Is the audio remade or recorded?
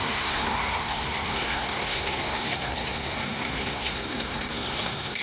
remade